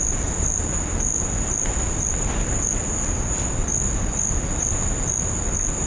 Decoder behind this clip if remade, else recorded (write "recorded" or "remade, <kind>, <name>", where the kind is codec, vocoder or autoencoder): recorded